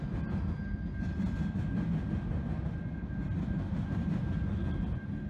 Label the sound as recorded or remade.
recorded